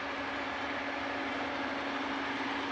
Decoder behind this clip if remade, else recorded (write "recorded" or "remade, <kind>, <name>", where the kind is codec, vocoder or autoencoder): recorded